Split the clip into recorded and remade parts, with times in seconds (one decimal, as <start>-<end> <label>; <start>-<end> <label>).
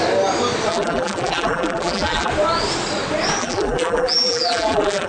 0.0-0.7 recorded; 0.7-2.3 remade; 2.3-3.4 recorded; 3.4-5.1 remade